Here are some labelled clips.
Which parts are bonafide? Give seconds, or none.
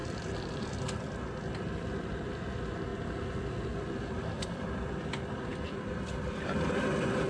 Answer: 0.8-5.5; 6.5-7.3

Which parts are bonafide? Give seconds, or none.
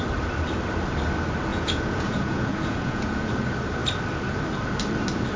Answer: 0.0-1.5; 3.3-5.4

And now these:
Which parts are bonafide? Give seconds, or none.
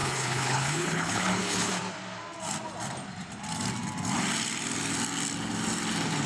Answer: 1.7-6.3